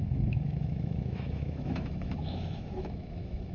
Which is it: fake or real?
fake